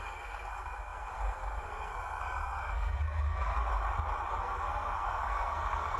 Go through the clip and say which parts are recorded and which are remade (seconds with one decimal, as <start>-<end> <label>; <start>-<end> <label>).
0.0-3.7 remade; 3.7-4.3 recorded; 4.3-6.0 remade